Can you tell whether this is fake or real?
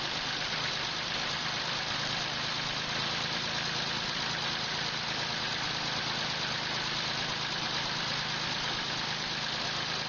fake